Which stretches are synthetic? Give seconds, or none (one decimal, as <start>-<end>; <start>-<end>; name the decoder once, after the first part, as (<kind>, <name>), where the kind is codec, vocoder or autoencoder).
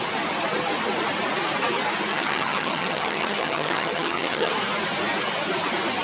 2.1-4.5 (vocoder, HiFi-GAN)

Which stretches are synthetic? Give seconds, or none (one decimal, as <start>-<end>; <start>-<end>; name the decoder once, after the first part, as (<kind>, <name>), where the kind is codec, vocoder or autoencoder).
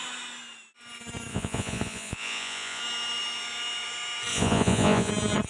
1.3-2.8 (vocoder, Vocos); 4.3-5.1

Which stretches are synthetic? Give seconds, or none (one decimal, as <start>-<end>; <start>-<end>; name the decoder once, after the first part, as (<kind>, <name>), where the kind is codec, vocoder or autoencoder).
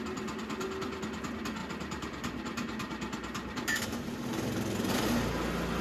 1.6-4.9 (vocoder, BigVGAN v2)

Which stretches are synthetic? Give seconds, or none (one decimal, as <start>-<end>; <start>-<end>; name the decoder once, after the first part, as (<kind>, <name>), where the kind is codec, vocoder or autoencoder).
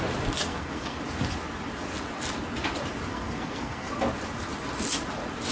0.4-1.0 (codec, SNAC); 3.1-3.9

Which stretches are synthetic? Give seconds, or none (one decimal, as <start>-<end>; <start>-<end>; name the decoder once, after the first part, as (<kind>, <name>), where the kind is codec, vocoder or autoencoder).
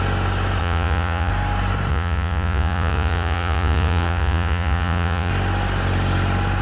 0.6-1.3 (vocoder, Vocos); 1.9-5.3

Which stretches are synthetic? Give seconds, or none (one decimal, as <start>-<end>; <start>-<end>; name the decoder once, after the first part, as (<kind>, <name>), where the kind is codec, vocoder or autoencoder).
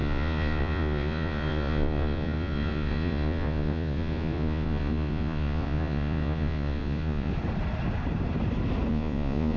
0.0-7.3 (vocoder, Vocos); 8.9-9.6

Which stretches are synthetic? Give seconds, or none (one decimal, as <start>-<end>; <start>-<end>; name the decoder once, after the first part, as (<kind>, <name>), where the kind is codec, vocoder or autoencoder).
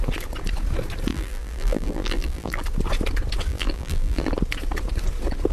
1.1-2.6 (vocoder, BigVGAN v2); 3.5-4.3